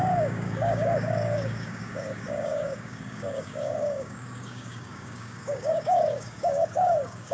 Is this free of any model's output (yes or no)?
no